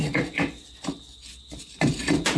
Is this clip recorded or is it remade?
recorded